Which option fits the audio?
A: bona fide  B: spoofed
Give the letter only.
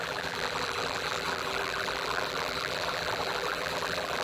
B